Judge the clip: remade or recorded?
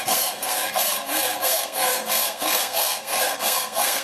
remade